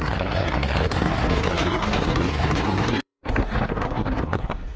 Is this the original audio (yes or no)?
no